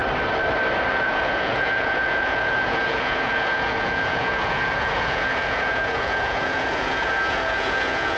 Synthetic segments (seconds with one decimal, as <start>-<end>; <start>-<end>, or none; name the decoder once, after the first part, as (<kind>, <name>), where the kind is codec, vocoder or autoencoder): 0.9-8.2 (vocoder, Vocos)

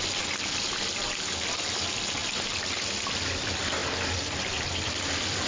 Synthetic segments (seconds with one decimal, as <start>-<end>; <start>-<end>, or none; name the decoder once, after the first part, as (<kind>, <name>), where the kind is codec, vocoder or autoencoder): none

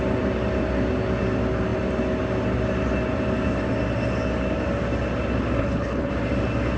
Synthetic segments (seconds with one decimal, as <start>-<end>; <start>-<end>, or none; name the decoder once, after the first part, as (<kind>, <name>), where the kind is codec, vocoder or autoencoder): 5.6-6.1 (codec, HILCodec)

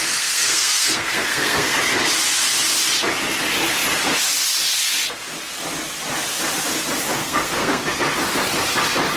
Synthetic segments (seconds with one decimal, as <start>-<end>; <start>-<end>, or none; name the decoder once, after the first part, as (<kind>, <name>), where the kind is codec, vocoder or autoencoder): 0.0-1.8 (codec, SNAC); 7.2-7.9